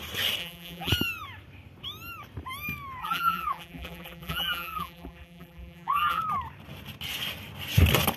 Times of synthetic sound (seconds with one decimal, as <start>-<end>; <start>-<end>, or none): 0.4-0.9; 3.0-6.2